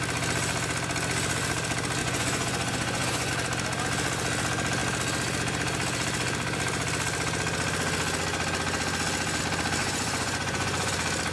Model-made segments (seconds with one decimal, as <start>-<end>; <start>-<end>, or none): 2.0-3.3; 9.8-10.9